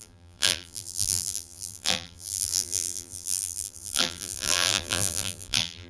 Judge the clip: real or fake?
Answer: fake